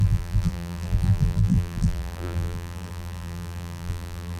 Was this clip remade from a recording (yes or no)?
yes